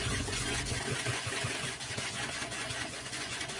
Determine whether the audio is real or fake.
fake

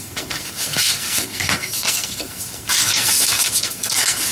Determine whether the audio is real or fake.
fake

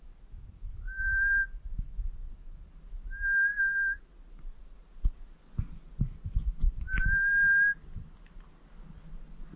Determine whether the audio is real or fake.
real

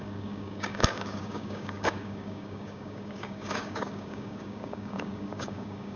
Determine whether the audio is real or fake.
fake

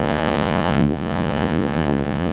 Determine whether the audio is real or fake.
fake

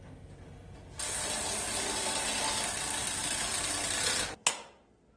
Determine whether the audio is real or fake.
real